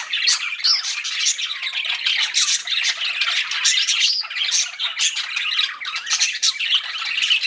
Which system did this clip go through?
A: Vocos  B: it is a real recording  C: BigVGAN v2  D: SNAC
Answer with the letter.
B